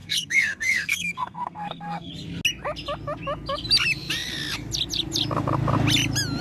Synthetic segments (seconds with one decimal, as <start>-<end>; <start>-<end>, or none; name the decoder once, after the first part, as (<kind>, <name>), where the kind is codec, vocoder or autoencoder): 0.0-2.1 (codec, SNAC)